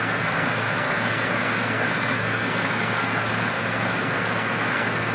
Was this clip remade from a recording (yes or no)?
yes